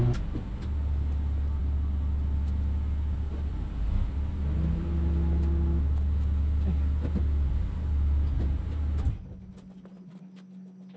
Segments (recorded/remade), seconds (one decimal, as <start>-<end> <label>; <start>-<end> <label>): 0.0-11.0 recorded